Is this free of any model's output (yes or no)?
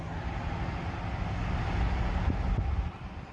yes